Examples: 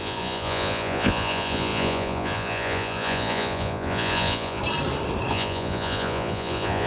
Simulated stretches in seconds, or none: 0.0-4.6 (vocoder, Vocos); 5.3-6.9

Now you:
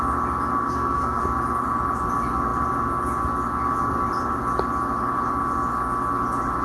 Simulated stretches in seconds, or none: 0.6-1.2 (codec, SNAC)

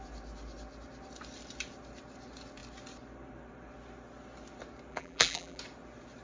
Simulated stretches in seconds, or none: 4.9-5.6 (vocoder, BigVGAN v2)

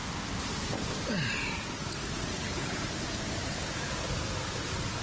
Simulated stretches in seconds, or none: 2.3-2.8 (codec, HILCodec)